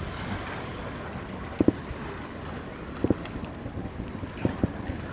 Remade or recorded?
recorded